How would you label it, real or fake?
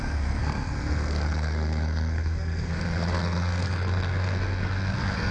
fake